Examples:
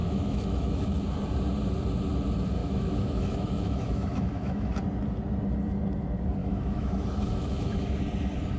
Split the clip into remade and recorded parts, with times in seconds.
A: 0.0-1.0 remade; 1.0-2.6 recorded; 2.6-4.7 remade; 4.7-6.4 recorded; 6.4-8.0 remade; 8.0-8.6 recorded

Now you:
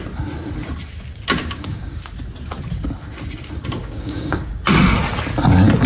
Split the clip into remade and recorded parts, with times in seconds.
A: 0.0-1.4 recorded; 1.4-2.0 remade; 2.0-3.8 recorded; 3.8-4.6 remade; 4.6-5.9 recorded

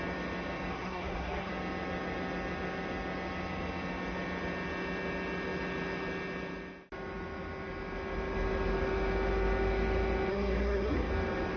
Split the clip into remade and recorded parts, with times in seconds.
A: 0.0-0.7 recorded; 0.7-1.5 remade; 1.5-10.3 recorded; 10.3-11.1 remade; 11.1-11.6 recorded

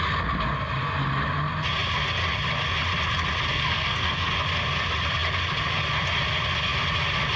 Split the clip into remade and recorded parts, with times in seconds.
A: 0.0-3.5 recorded; 3.5-4.3 remade; 4.3-7.4 recorded

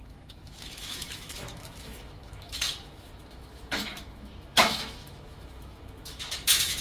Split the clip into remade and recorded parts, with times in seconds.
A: 0.0-6.8 remade

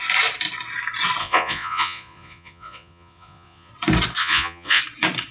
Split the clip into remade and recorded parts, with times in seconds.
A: 0.0-1.2 recorded; 1.2-3.7 remade; 3.7-4.2 recorded; 4.2-4.8 remade; 4.8-5.3 recorded